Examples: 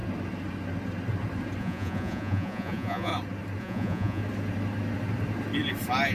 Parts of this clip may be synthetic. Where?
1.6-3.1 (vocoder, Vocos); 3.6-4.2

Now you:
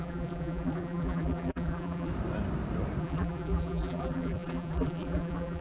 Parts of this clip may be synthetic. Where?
0.0-2.1 (vocoder, BigVGAN v2); 3.0-5.6

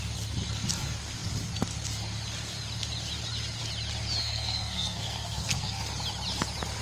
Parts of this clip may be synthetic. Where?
4.2-5.8 (codec, SNAC)